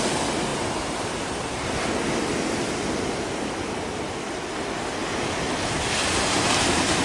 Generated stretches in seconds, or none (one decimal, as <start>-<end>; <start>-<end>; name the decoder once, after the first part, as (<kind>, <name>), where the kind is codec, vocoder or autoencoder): 0.5-1.7 (vocoder, BigVGAN v2)